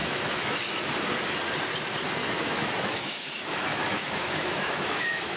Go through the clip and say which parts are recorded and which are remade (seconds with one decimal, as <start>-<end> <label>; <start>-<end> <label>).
0.0-0.8 remade; 0.8-2.2 recorded; 2.2-5.4 remade